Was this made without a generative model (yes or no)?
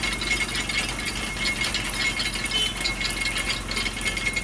yes